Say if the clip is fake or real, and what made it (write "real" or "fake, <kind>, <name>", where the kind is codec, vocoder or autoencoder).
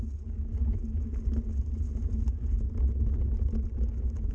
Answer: real